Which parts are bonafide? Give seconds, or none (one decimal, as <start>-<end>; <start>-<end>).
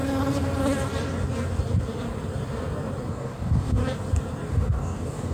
0.0-3.1; 3.8-4.5